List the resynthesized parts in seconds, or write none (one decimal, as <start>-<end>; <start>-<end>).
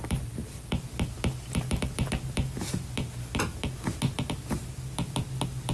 none